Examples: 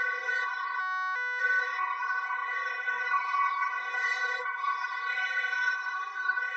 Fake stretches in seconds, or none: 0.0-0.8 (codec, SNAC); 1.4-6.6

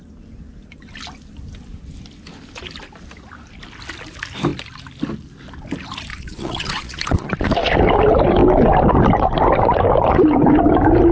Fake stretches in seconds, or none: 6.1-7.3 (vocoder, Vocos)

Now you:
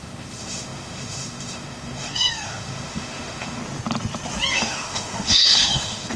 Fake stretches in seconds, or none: 0.0-3.6 (autoencoder, DAC-VAE); 4.5-6.2